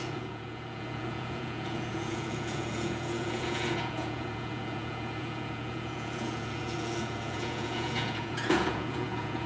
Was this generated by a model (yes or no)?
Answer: yes